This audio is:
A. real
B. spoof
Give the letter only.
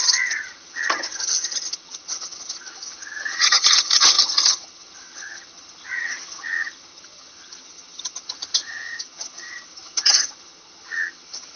B